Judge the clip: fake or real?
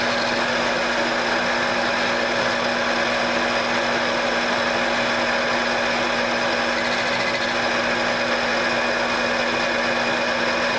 real